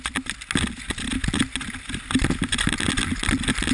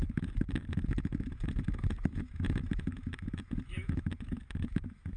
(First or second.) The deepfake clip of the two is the second